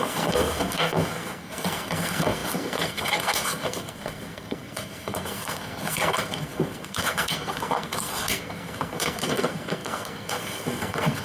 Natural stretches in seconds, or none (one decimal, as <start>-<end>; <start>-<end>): none